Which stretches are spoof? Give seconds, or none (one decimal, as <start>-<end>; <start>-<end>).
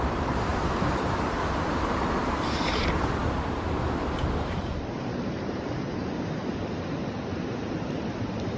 0.0-0.5; 2.2-6.0